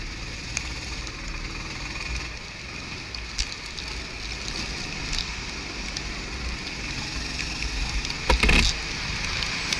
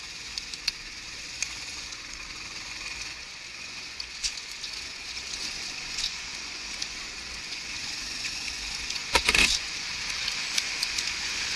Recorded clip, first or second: first